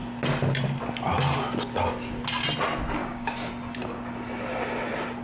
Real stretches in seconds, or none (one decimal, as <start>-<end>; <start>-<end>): 0.0-3.0; 3.5-5.2

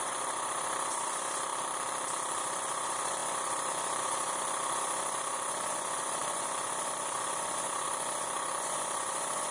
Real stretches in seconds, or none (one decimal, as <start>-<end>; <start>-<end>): 1.5-2.4

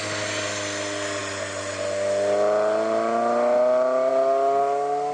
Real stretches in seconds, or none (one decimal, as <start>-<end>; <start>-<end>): 0.0-5.1